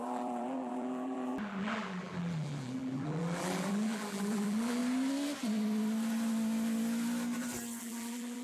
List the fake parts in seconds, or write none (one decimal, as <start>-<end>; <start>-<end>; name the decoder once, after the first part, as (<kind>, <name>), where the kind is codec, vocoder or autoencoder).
0.0-4.8 (vocoder, BigVGAN v2); 7.8-8.4